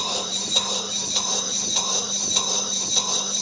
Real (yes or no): no